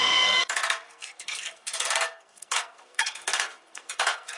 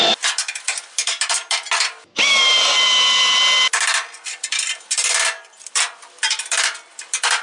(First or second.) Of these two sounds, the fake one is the first